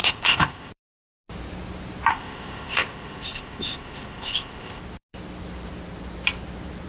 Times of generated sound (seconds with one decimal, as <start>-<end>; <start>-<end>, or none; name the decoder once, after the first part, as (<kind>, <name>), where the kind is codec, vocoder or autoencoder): 0.0-0.7 (codec, ZipCodec); 2.1-4.8